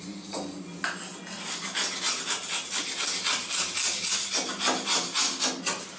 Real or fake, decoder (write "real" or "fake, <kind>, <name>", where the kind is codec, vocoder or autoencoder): real